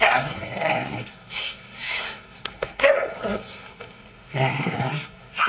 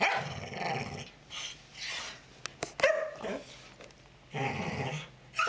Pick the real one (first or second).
second